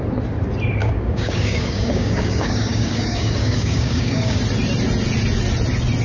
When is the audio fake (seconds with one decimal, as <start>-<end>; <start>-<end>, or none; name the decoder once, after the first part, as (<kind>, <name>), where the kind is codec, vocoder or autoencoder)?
0.8-4.4 (codec, DAC)